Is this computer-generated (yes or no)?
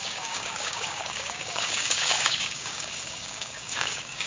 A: yes